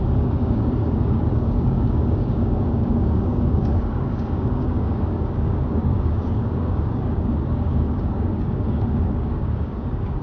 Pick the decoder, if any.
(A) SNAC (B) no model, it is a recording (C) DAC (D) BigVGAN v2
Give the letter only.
C